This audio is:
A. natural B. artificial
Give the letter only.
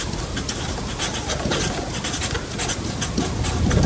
A